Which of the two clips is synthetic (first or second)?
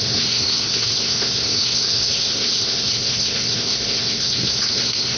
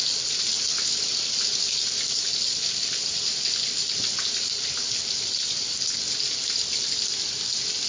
first